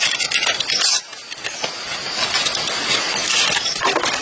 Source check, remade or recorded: recorded